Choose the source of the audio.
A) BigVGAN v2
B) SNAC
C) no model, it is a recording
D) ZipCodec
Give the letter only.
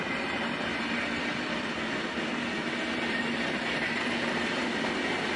C